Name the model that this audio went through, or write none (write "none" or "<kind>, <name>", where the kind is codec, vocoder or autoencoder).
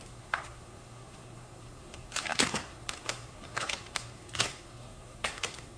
codec, SNAC